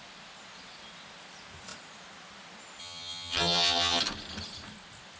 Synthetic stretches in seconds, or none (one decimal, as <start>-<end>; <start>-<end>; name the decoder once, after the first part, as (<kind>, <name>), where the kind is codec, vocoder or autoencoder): 2.8-4.0 (vocoder, HiFi-GAN)